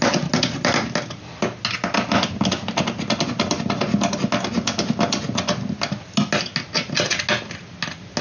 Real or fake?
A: real